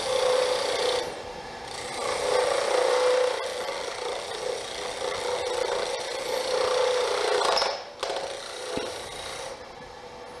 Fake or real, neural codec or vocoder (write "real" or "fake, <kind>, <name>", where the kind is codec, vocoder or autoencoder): real